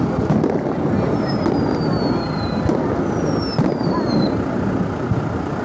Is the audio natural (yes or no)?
yes